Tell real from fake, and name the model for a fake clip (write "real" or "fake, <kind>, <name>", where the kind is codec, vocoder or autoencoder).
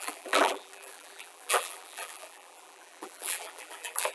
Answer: fake, vocoder, BigVGAN v2